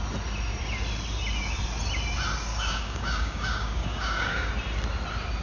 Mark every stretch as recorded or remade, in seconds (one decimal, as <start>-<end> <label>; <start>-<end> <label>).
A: 0.0-2.5 recorded; 2.5-4.5 remade; 4.5-5.4 recorded